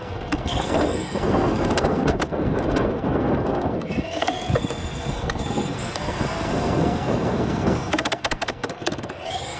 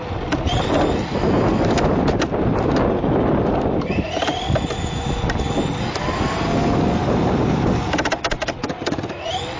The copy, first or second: first